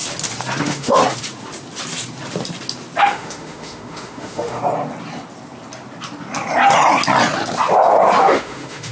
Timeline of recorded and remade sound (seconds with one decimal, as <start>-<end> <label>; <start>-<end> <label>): 0.0-0.6 recorded; 0.6-1.0 remade; 1.0-3.0 recorded; 3.0-4.6 remade; 4.6-8.2 recorded; 8.2-8.9 remade